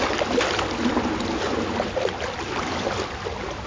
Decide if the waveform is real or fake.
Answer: real